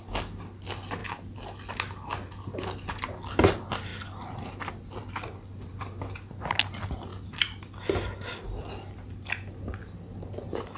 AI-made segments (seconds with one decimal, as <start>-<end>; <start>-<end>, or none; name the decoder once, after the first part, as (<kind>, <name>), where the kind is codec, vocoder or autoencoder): 3.9-4.5 (vocoder, BigVGAN v2); 5.0-5.7; 7.1-8.1